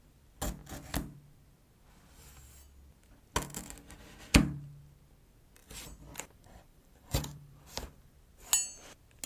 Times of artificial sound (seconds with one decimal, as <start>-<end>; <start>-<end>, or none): 5.6-8.1